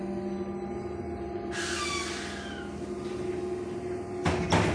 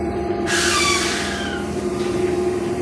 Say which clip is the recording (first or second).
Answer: first